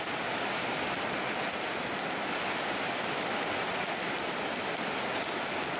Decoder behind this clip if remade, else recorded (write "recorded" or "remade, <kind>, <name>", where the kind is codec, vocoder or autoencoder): recorded